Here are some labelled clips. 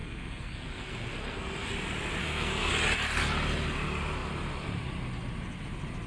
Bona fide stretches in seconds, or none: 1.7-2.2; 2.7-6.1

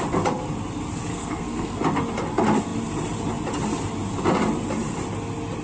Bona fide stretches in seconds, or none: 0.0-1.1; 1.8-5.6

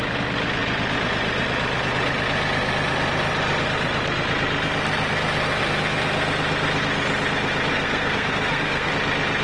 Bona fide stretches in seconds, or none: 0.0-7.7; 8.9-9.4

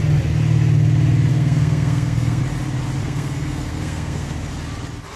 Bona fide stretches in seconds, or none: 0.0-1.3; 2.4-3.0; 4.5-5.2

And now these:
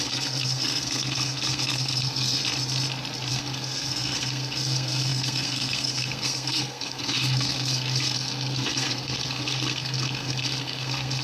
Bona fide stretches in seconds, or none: 2.4-3.3

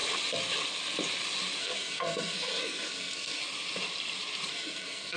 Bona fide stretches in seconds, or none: 0.0-1.6; 3.4-4.5

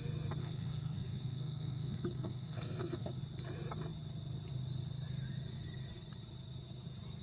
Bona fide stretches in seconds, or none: 0.0-0.4; 3.2-7.2